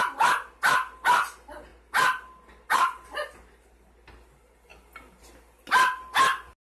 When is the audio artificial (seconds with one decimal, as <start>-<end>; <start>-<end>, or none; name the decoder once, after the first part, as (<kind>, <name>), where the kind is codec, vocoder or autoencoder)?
none